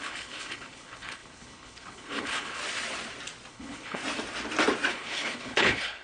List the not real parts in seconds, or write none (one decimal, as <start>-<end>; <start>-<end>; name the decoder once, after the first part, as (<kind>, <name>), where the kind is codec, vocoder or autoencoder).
0.0-2.6 (codec, HILCodec); 3.5-4.0; 4.9-6.0